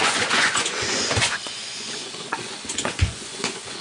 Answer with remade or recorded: remade